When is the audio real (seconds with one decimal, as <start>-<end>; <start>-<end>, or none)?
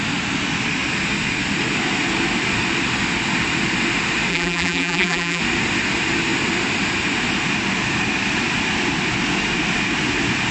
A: 0.0-4.3; 5.4-10.5